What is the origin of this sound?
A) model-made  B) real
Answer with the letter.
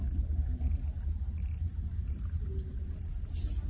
B